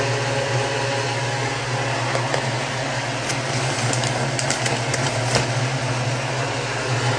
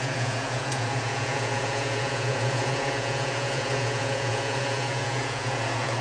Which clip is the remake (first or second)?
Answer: second